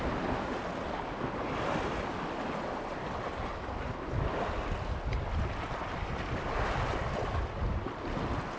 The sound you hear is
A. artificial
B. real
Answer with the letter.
B